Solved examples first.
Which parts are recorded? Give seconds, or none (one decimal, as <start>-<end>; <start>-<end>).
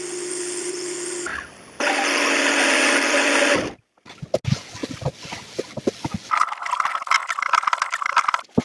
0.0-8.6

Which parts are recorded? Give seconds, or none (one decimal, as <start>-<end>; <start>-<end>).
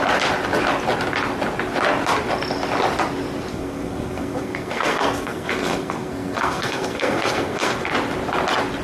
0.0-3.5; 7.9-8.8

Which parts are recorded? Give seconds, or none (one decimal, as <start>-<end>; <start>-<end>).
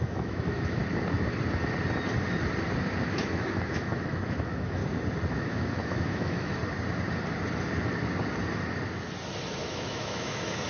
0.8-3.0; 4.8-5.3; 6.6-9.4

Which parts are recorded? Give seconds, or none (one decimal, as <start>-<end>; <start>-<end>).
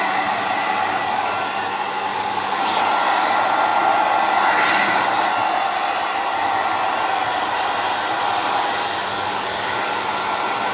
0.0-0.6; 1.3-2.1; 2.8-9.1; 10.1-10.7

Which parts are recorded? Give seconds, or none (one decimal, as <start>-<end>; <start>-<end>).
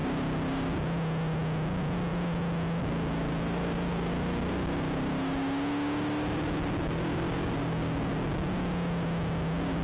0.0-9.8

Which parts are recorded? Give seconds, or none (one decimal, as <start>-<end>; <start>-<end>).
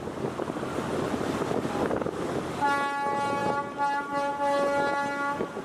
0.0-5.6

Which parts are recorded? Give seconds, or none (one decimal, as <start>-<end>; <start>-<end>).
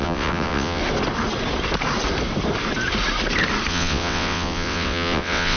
0.8-3.7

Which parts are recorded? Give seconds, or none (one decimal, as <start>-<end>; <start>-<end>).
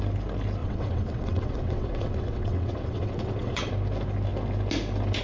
0.0-0.6; 3.7-5.2